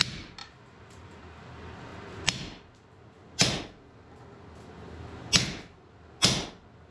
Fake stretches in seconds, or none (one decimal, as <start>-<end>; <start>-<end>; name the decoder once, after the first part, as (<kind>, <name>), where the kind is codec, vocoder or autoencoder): 0.4-1.2 (vocoder, BigVGAN v2)